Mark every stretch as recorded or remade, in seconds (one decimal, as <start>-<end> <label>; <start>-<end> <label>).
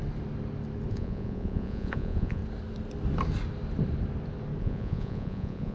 0.0-0.9 recorded; 0.9-2.4 remade; 2.4-4.6 recorded; 4.6-5.7 remade